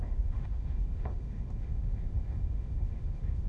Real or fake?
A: fake